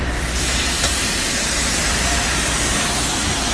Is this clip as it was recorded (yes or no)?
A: no